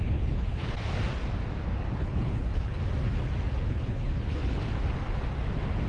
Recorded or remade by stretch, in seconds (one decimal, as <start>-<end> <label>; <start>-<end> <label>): 0.0-0.8 remade; 0.8-2.0 recorded; 2.0-2.8 remade; 2.8-3.7 recorded; 3.7-4.4 remade; 4.4-5.9 recorded